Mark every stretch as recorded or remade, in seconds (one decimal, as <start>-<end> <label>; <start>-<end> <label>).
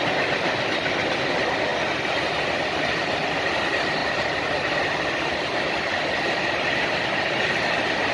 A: 0.0-4.0 recorded; 4.0-7.6 remade; 7.6-8.1 recorded